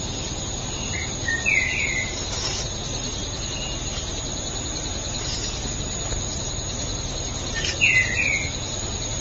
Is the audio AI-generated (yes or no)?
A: no